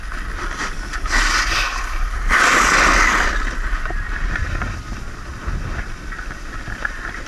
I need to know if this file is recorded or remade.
recorded